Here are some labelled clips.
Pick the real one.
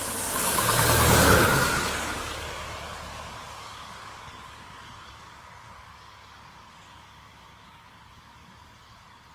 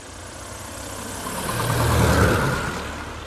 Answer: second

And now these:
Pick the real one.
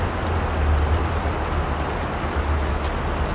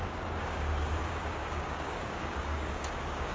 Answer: first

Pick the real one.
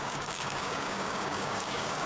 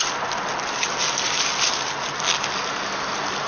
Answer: second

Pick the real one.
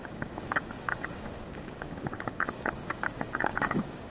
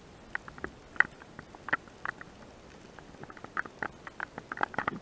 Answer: second